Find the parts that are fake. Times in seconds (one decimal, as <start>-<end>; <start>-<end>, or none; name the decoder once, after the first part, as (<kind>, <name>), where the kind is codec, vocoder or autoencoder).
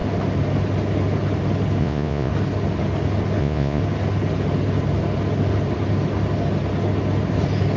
1.8-2.3 (vocoder, Vocos); 3.4-3.8